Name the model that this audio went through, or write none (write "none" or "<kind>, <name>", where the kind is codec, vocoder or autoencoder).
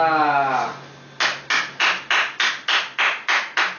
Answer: none